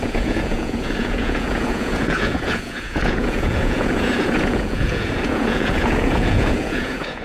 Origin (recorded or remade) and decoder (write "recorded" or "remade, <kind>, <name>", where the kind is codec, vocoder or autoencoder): remade, vocoder, Vocos